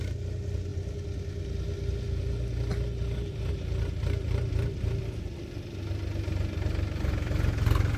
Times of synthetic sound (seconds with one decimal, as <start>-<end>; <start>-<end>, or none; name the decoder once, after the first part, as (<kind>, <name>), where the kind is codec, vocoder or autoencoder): none